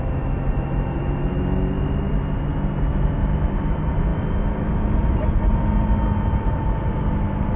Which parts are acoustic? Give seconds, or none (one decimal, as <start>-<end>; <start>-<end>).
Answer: 0.0-7.6